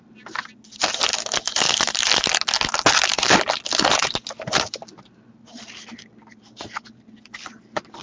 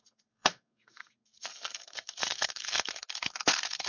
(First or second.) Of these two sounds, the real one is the first